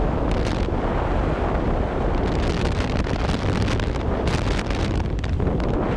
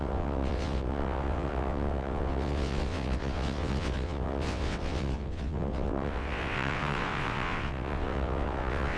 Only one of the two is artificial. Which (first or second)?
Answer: second